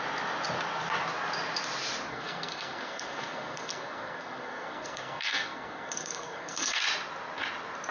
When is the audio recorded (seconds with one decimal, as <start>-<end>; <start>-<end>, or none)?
0.0-2.1; 6.8-7.9